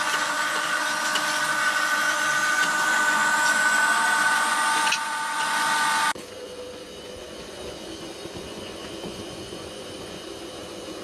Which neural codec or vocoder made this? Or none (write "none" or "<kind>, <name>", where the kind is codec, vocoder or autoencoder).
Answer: vocoder, Vocos